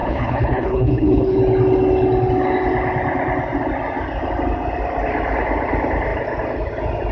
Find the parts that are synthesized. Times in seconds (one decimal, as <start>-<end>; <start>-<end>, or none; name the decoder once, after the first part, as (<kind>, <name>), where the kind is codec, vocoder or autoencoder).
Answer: 0.0-1.4 (codec, HILCodec)